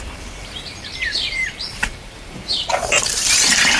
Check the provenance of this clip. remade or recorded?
remade